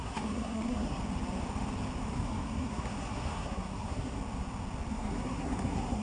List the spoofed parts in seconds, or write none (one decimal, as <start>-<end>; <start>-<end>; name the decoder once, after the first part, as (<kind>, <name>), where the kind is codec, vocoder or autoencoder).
0.0-1.0 (codec, SNAC); 2.1-4.2; 4.9-6.0